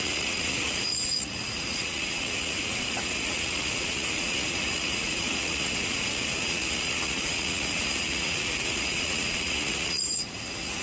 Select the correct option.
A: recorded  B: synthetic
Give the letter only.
B